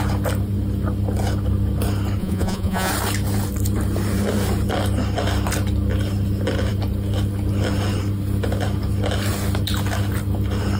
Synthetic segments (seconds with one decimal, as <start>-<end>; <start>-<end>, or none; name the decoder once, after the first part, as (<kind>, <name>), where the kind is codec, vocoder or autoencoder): 2.2-2.9 (vocoder, Vocos)